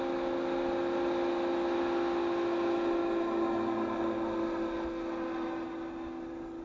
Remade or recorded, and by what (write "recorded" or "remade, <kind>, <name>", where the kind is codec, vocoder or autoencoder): recorded